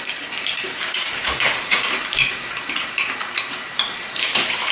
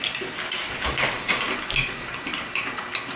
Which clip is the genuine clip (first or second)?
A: second